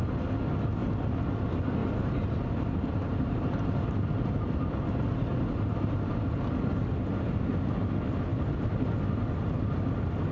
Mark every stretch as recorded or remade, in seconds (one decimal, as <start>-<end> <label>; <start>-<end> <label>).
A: 0.0-1.8 recorded; 1.8-4.7 remade; 4.7-10.3 recorded